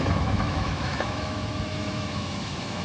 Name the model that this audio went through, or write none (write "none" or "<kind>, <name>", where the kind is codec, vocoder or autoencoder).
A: autoencoder, DAC-VAE